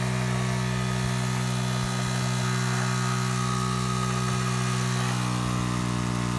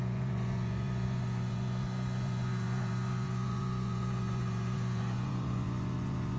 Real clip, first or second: first